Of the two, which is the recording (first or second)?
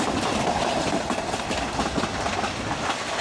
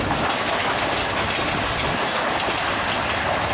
second